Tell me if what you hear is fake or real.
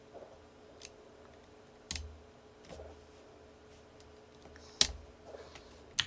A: real